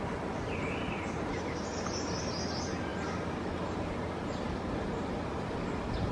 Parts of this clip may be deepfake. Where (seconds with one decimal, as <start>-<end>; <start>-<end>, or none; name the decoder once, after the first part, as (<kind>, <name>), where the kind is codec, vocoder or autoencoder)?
0.6-1.7 (vocoder, BigVGAN v2)